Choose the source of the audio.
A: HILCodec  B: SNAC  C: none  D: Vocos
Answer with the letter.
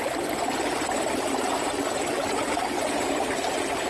C